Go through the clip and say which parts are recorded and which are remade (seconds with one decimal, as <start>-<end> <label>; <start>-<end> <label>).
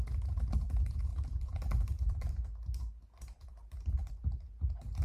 0.0-1.1 recorded; 1.1-4.1 remade; 4.1-5.0 recorded